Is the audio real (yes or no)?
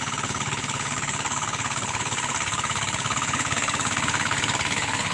no